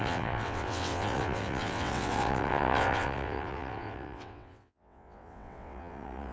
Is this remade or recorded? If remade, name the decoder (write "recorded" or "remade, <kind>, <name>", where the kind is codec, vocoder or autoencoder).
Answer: remade, vocoder, WaveNeXt